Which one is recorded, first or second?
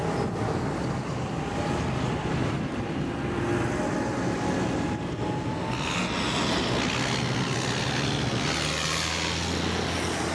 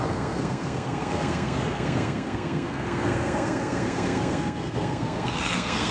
first